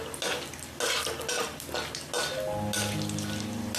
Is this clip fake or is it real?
real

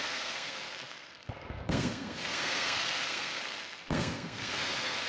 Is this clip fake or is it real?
fake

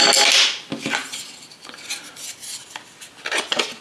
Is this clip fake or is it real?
real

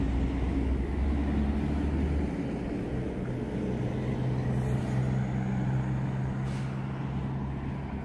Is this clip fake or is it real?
real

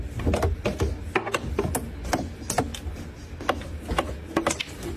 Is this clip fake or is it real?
real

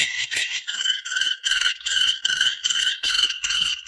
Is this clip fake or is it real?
fake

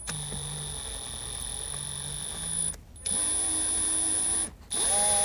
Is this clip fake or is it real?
real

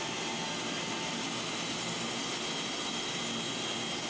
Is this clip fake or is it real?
real